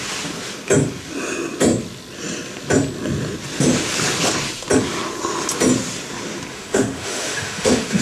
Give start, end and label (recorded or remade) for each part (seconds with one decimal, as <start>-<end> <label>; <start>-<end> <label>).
0.0-6.5 recorded; 6.5-8.0 remade